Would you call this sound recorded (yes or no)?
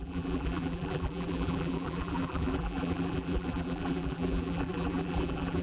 no